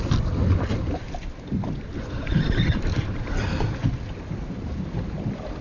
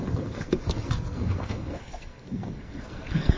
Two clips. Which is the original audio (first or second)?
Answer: first